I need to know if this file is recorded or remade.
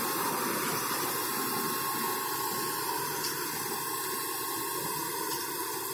recorded